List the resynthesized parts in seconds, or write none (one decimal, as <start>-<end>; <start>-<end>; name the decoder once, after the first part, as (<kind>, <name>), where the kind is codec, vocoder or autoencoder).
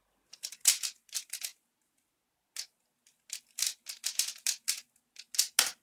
none